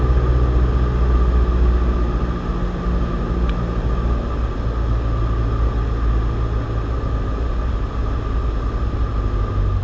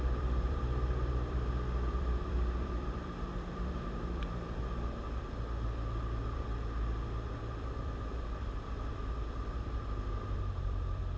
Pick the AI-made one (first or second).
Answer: second